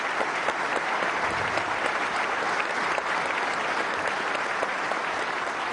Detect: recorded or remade recorded